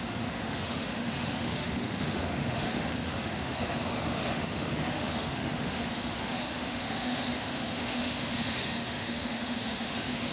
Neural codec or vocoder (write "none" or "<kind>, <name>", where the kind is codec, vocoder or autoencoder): autoencoder, DAC-VAE